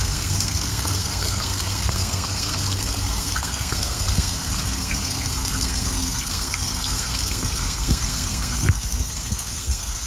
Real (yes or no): no